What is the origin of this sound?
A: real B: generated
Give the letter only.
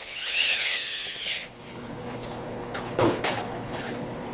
B